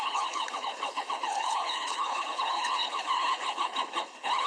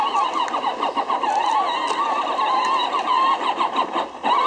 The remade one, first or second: first